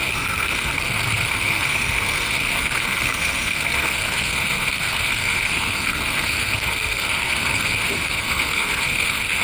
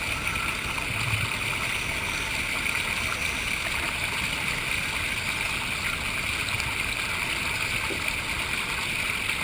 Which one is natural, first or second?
second